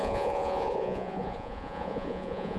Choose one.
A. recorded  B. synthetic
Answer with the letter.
B